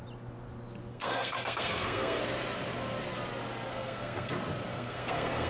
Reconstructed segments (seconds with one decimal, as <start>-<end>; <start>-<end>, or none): 0.9-2.2; 3.7-4.3; 4.7-5.5